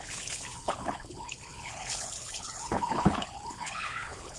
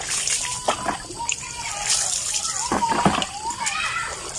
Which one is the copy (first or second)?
first